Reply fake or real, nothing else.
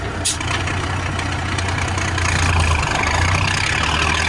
real